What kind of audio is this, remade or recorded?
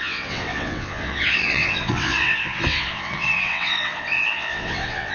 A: remade